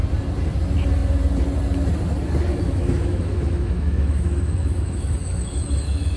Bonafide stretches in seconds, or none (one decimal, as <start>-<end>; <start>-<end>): 0.0-2.5